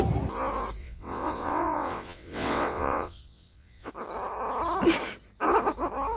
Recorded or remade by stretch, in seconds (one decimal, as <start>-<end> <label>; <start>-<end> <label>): 0.0-0.8 recorded; 0.8-3.9 remade; 3.9-6.2 recorded